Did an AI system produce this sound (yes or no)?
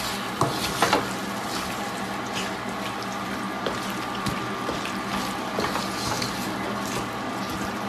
no